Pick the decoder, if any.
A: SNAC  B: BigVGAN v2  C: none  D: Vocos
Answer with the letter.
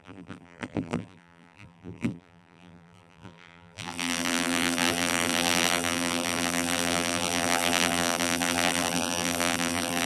B